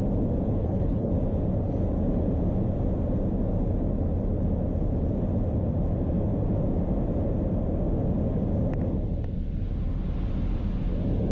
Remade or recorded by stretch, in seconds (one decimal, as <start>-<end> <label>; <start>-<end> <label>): 0.0-0.6 recorded; 0.6-1.1 remade; 1.1-11.3 recorded